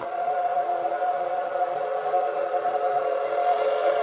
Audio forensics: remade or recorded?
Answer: remade